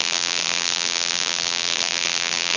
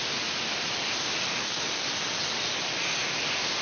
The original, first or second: second